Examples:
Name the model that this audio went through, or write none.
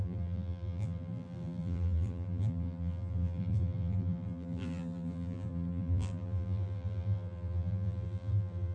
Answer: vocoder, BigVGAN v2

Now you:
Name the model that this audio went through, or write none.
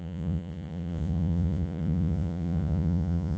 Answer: vocoder, Vocos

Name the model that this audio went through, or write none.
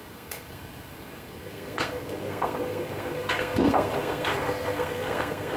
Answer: codec, SNAC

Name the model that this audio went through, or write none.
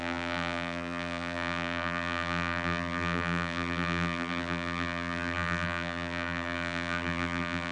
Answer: vocoder, BigVGAN v2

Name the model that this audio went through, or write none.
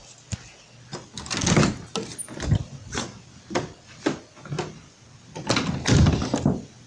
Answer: none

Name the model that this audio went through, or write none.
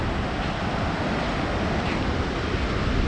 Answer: none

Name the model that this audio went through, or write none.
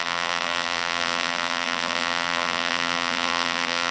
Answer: vocoder, BigVGAN v2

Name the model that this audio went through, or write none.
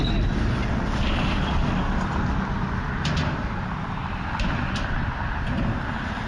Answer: none